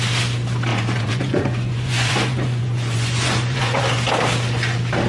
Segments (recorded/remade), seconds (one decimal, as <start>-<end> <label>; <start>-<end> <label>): 0.0-0.7 recorded; 0.7-3.8 remade; 3.8-5.1 recorded